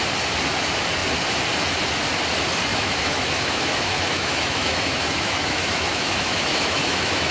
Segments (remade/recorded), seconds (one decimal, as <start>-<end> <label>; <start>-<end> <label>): 0.0-2.7 recorded; 2.7-7.3 remade